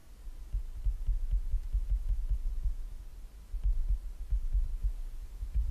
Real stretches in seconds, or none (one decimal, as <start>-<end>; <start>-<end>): 0.0-4.8